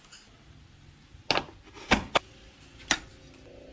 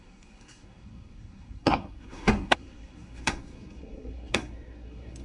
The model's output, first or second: second